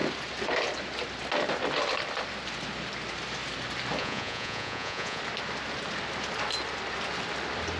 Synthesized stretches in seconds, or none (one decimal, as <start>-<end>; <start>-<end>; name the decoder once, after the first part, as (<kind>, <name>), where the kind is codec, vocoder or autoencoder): 4.0-5.2 (vocoder, Vocos)

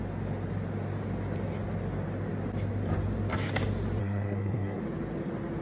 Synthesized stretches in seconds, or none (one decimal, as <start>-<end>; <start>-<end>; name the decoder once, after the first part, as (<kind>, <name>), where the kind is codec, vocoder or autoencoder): 4.0-4.8 (codec, SNAC)

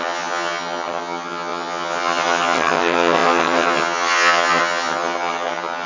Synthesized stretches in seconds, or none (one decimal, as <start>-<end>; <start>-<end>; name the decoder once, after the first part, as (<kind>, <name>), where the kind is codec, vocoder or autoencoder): 0.0-5.9 (vocoder, HiFi-GAN)

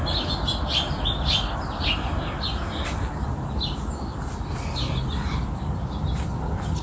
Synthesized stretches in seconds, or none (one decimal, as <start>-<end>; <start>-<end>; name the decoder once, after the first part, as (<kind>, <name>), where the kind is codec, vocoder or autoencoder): none

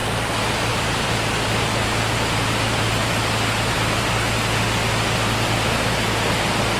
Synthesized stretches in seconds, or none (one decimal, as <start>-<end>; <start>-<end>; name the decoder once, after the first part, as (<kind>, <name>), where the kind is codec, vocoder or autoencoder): none

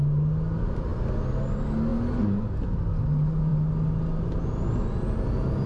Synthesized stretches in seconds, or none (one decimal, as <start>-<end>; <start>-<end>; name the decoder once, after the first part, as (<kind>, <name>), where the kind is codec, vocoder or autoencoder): none